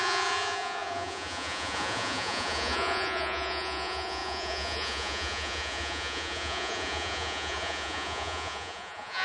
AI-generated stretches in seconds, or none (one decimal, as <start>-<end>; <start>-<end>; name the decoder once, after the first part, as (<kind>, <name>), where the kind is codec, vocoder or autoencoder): 0.0-9.2 (vocoder, Vocos)